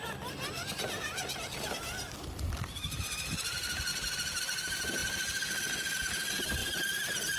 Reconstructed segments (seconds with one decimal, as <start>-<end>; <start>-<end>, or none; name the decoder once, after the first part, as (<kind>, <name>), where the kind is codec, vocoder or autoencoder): 0.0-3.9 (vocoder, BigVGAN v2); 4.4-5.0; 6.0-6.6